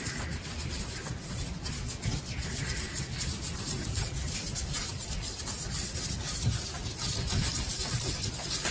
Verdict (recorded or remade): recorded